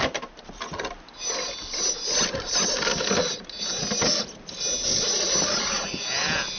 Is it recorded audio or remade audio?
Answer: recorded